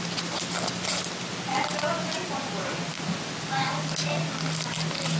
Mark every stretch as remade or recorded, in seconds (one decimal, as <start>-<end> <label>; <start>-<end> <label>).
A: 0.0-5.2 recorded